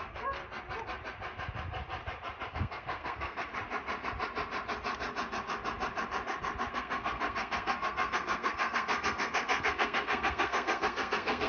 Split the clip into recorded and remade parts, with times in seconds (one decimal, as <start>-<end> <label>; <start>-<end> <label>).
0.0-0.4 remade; 0.4-2.5 recorded; 2.5-3.5 remade; 3.5-6.7 recorded; 6.7-11.5 remade